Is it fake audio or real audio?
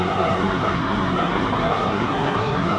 fake